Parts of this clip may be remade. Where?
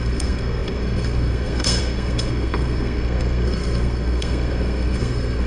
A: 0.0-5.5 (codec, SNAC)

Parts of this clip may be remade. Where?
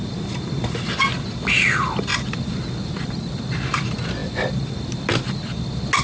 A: none